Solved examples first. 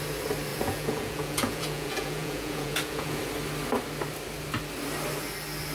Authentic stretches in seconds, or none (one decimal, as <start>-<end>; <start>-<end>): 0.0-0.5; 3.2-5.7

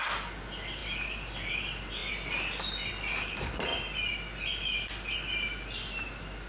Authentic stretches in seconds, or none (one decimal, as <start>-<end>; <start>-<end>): 0.0-6.5

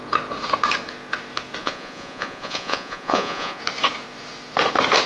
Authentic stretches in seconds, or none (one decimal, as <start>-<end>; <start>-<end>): 0.0-1.6; 3.6-5.1

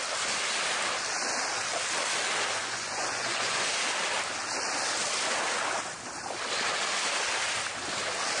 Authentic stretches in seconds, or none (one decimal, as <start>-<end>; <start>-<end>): 0.0-2.6; 3.7-8.4

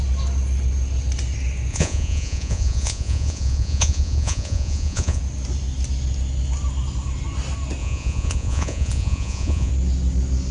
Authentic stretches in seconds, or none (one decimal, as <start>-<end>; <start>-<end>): 0.0-1.7; 5.2-7.8; 9.7-10.5

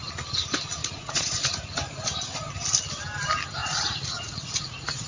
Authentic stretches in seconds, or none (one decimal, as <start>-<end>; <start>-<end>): 0.0-0.8; 2.5-3.6

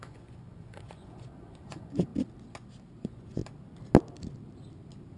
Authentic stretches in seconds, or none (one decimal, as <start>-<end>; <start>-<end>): 2.1-3.0; 3.4-5.2

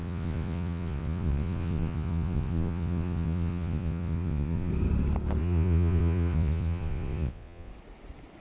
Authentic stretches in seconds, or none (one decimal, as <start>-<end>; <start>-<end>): 4.7-5.4; 7.7-8.4